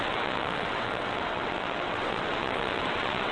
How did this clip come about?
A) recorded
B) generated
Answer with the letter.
B